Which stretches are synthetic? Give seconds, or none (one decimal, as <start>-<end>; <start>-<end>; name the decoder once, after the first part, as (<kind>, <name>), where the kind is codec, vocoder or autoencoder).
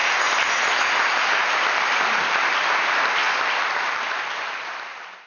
none